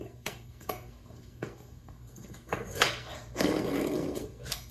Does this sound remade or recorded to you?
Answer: remade